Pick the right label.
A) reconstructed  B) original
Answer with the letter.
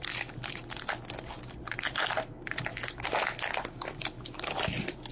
B